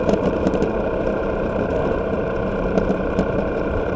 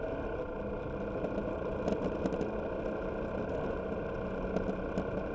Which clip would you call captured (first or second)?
second